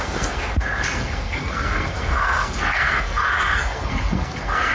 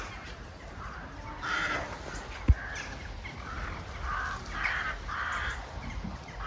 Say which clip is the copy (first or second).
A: first